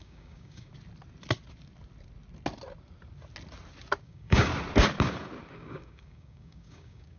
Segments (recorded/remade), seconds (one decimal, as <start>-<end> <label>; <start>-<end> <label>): 0.0-0.7 remade; 0.7-4.0 recorded; 4.0-4.5 remade; 4.5-5.5 recorded; 5.5-7.2 remade